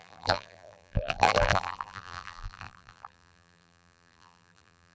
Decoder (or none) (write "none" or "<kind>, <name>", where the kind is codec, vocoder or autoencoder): vocoder, BigVGAN v2